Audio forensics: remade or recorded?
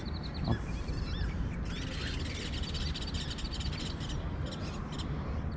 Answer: recorded